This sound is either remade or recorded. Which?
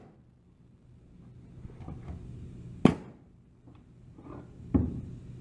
recorded